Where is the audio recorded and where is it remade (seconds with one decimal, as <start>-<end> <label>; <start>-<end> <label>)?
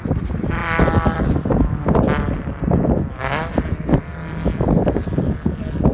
0.0-4.1 remade; 4.1-4.9 recorded; 4.9-5.9 remade